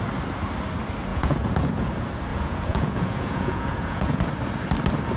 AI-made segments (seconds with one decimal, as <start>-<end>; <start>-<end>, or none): 1.1-1.9; 2.3-4.2